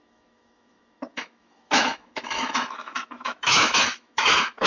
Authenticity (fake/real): fake